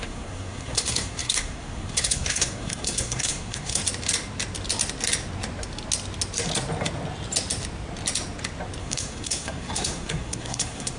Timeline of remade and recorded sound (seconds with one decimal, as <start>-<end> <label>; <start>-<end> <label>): 0.0-3.8 remade; 3.8-8.8 recorded; 8.8-11.0 remade